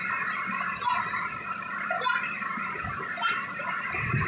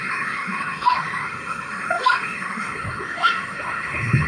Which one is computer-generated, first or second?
second